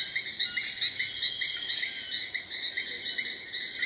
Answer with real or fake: real